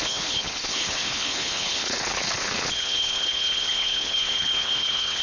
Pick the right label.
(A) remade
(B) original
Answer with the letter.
A